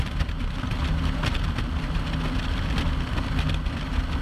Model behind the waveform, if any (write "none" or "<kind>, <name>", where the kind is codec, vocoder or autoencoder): none